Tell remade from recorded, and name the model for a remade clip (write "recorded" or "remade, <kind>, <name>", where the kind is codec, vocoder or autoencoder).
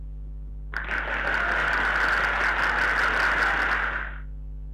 recorded